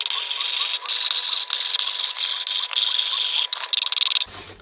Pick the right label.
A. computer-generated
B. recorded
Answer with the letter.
B